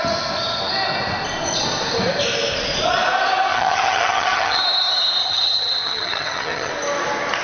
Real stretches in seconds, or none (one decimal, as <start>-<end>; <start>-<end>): 0.0-3.5; 4.6-5.2; 6.7-7.4